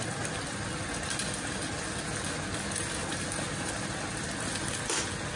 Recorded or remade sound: recorded